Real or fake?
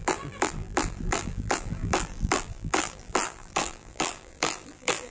fake